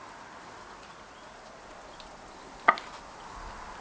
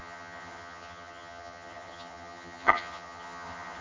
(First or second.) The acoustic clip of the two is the first